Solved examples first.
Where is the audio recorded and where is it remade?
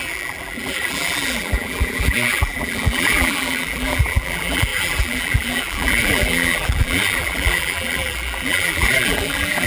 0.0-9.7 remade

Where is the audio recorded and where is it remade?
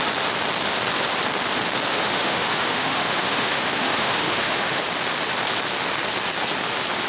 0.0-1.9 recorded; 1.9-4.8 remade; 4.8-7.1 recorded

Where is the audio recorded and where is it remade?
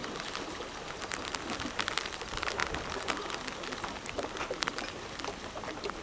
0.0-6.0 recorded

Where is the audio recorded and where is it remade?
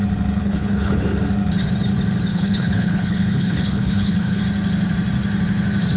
0.0-0.4 recorded; 0.4-1.0 remade; 1.0-2.3 recorded; 2.3-4.4 remade; 4.4-6.0 recorded